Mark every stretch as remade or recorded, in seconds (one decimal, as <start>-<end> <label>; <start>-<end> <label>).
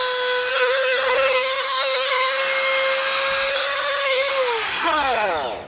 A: 0.0-0.5 recorded; 0.5-2.4 remade; 2.4-3.5 recorded; 3.5-4.3 remade; 4.3-4.7 recorded; 4.7-5.3 remade; 5.3-5.7 recorded